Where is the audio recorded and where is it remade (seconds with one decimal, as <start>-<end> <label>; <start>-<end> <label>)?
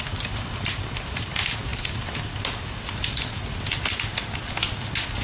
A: 0.0-5.2 recorded